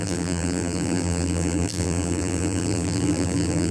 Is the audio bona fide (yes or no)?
no